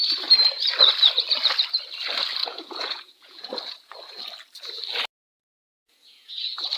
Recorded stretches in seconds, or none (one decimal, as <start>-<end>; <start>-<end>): 0.0-2.4; 3.9-5.4